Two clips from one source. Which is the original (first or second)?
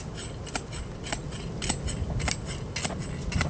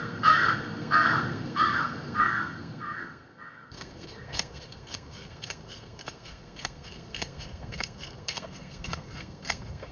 first